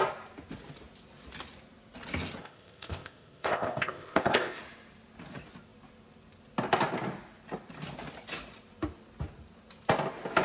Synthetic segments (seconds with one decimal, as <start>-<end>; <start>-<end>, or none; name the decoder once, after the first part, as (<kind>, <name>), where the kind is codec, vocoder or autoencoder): 2.4-4.6 (codec, ZipCodec)